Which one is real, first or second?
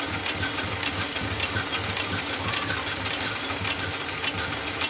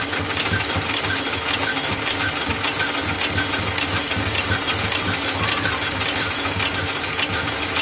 second